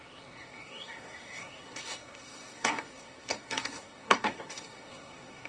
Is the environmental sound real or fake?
fake